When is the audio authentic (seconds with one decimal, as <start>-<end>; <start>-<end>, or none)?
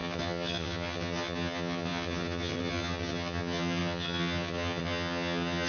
none